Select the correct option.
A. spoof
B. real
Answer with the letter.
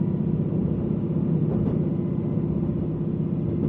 B